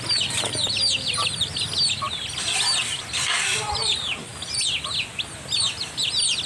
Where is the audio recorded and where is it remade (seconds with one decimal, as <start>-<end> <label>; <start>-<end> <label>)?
0.0-6.5 recorded